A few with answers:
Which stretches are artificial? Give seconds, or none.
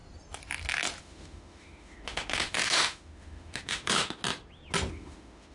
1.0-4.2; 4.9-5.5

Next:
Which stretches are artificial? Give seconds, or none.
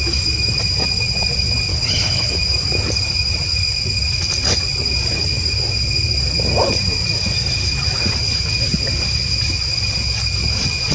1.7-2.3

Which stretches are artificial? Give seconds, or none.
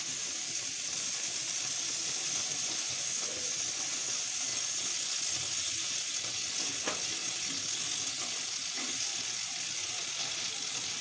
2.2-4.1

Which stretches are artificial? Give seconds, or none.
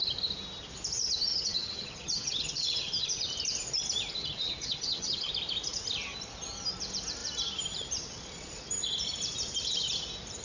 1.3-3.1; 4.2-5.3